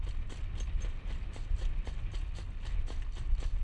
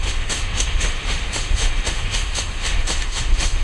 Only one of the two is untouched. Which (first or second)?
first